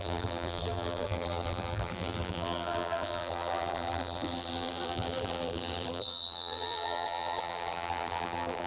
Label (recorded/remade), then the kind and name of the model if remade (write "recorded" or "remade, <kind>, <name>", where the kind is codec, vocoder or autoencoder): remade, vocoder, BigVGAN v2